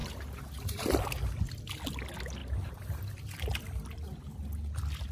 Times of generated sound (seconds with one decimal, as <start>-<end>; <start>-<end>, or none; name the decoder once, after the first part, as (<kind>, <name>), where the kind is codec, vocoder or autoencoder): 0.0-1.1 (vocoder, BigVGAN v2); 2.4-3.2